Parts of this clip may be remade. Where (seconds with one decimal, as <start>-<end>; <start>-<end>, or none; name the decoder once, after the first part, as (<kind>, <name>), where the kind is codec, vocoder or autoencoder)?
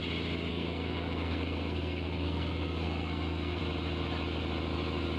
0.5-3.6 (codec, SNAC)